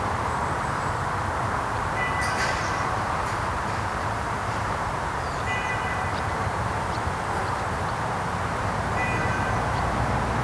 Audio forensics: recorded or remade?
remade